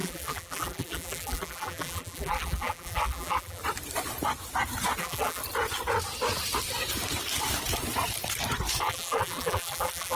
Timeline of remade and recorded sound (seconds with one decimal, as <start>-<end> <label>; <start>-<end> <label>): 0.0-3.6 remade; 3.6-5.0 recorded; 5.0-5.4 remade; 5.4-8.8 recorded; 8.8-10.2 remade